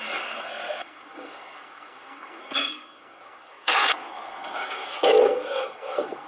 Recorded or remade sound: remade